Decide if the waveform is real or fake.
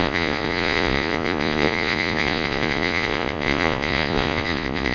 fake